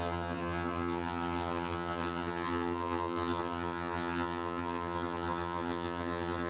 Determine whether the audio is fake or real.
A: fake